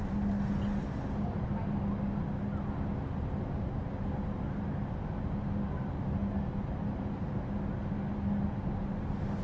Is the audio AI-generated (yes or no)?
no